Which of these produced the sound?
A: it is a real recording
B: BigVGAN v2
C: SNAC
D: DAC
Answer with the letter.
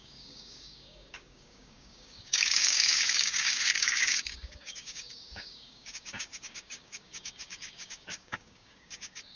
D